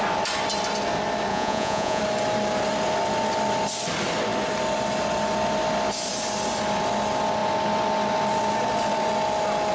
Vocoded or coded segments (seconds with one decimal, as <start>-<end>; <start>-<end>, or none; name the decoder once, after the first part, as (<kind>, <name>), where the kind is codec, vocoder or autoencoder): 1.3-2.0 (vocoder, Vocos)